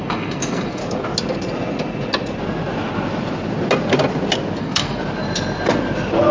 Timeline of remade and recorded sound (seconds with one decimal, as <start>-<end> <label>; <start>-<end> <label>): 0.0-0.8 remade; 0.8-4.6 recorded; 4.6-5.0 remade; 5.0-6.3 recorded